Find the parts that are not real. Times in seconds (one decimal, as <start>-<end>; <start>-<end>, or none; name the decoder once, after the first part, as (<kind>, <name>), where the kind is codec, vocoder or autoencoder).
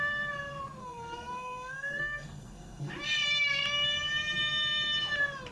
0.8-2.9 (codec, SNAC)